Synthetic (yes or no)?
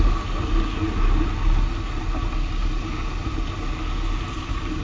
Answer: no